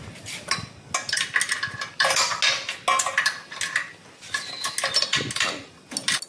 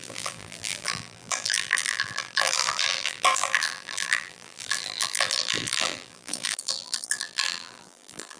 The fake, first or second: second